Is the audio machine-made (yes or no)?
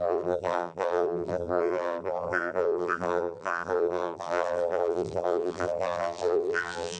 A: yes